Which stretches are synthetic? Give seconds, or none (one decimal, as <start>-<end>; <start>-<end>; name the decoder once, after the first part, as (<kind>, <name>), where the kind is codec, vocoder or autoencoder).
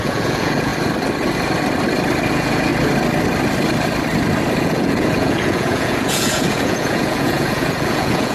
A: 0.0-0.7 (vocoder, Vocos); 2.3-2.7; 4.6-8.3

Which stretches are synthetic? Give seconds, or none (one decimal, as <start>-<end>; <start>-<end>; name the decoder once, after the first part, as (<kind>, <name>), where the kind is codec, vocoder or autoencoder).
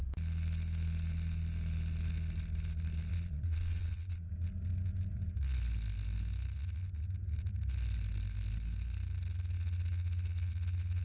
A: 3.1-4.3 (vocoder, Vocos)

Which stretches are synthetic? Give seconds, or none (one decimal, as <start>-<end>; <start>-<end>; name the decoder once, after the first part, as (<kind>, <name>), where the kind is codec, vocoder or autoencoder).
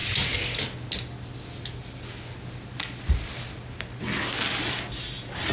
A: none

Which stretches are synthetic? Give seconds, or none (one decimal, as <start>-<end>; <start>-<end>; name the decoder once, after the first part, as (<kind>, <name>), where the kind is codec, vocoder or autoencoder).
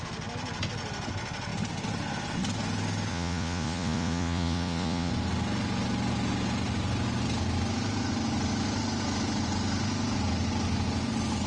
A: 3.1-5.1 (vocoder, Vocos)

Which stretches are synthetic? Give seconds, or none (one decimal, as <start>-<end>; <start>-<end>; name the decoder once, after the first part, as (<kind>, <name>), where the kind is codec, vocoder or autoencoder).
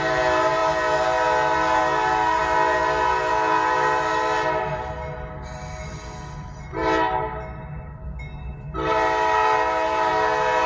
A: none